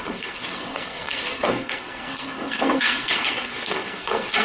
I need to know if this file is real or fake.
fake